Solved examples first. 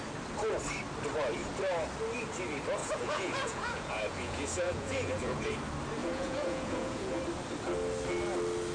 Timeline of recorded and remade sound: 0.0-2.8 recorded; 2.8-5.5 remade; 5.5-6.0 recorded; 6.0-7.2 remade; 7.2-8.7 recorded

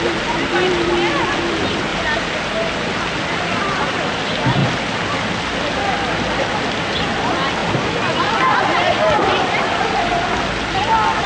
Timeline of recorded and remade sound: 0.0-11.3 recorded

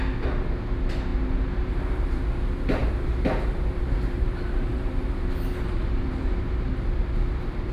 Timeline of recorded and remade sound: 0.0-1.1 recorded; 1.1-2.2 remade; 2.2-2.8 recorded; 2.8-6.7 remade; 6.7-7.7 recorded